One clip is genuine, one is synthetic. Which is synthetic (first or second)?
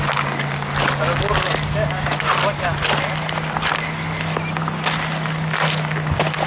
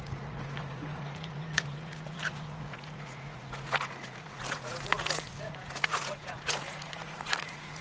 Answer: second